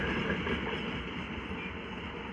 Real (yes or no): no